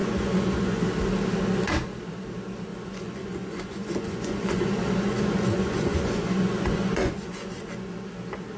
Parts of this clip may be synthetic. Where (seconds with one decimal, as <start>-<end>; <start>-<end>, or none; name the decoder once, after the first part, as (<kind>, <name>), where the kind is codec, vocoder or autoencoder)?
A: 0.0-0.8 (vocoder, Vocos); 2.7-7.9

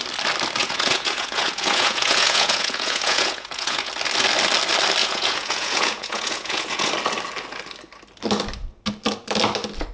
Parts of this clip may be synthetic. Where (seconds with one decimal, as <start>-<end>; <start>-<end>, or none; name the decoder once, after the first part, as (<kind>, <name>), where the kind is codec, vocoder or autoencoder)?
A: 0.6-3.9 (vocoder, Vocos); 5.0-6.9

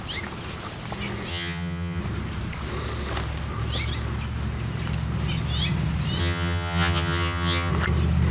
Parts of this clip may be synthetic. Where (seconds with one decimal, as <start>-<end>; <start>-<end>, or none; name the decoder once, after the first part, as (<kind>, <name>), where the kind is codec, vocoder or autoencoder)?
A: 1.3-2.0 (vocoder, HiFi-GAN); 6.2-7.7

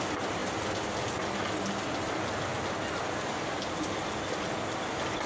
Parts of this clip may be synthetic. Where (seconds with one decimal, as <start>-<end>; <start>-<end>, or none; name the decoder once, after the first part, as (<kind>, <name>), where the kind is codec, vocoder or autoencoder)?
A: none

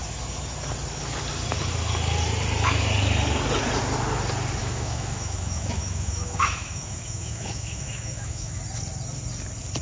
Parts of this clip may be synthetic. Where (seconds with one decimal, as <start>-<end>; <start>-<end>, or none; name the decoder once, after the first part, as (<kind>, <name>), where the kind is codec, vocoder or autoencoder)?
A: 4.6-8.6 (autoencoder, DAC-VAE)

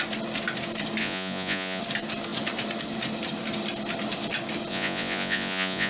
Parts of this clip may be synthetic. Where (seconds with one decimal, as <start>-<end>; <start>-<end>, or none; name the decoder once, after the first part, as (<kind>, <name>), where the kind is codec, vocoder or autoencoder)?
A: 1.0-1.8 (vocoder, Vocos); 4.7-5.9